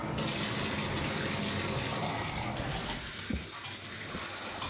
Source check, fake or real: real